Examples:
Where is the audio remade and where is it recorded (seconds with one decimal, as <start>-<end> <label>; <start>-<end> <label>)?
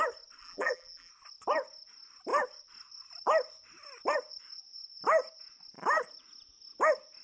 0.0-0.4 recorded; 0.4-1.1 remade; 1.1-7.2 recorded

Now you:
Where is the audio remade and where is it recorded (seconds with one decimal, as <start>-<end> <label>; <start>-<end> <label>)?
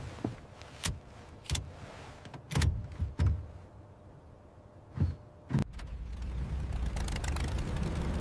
0.0-8.2 recorded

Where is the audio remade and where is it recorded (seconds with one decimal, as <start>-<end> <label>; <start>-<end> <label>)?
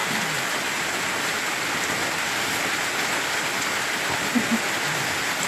0.0-5.5 recorded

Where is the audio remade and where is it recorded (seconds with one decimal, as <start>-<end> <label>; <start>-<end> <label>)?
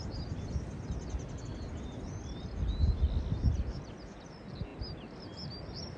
0.0-6.0 recorded